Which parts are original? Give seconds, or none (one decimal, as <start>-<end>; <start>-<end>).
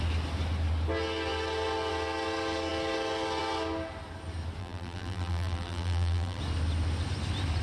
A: 0.0-4.6; 6.4-7.6